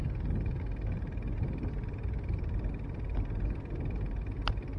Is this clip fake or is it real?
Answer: real